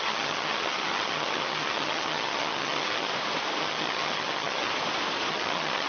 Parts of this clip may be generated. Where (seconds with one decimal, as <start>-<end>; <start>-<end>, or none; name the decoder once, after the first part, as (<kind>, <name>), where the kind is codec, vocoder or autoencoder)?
0.0-3.1 (vocoder, HiFi-GAN); 3.6-4.7; 5.3-5.9